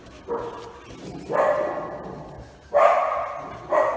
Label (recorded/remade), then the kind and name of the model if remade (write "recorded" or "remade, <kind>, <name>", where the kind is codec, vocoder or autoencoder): recorded